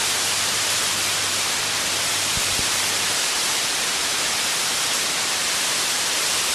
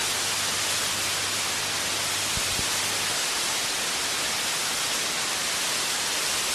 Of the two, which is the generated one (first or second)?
first